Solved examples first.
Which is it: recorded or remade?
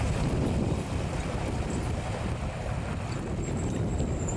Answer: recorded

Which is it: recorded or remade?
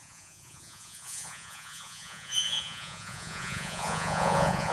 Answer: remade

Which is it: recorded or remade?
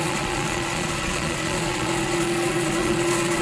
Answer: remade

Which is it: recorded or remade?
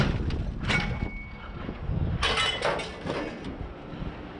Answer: recorded